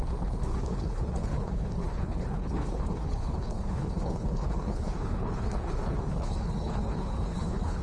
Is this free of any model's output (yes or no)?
no